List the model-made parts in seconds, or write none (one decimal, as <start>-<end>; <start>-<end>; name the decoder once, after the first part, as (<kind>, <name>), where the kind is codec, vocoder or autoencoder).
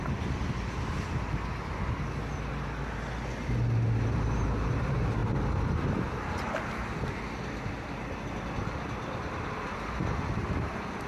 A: none